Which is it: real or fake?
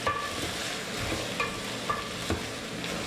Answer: real